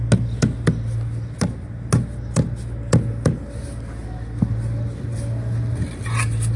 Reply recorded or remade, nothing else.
recorded